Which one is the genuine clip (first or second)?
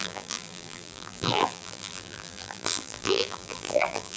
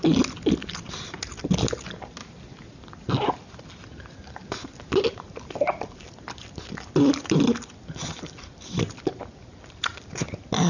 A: second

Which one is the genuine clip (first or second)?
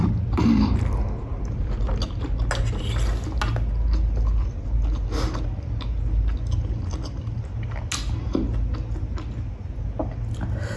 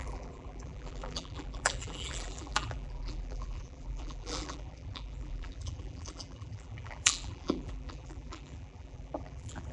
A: first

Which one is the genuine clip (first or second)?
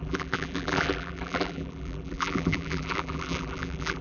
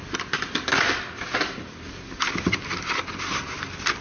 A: second